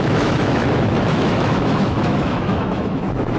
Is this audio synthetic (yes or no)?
yes